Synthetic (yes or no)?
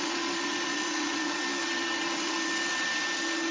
no